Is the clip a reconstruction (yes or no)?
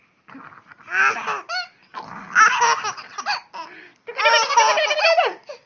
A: no